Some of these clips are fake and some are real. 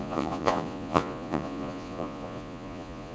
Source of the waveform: fake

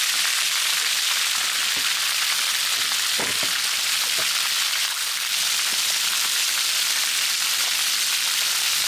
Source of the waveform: real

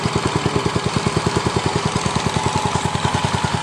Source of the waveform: real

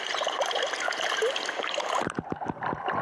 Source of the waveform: real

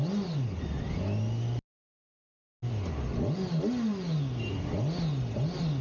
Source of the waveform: real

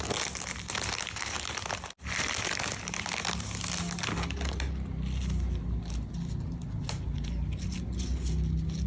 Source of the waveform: real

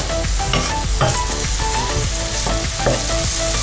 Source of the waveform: real